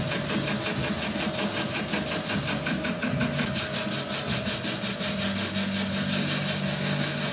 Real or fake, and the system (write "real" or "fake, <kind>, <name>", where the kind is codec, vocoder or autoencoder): real